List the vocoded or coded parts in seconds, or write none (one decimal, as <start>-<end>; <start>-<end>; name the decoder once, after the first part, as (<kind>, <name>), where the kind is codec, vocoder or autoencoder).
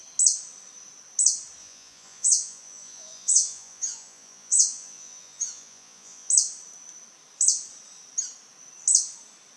1.6-6.3 (vocoder, Vocos)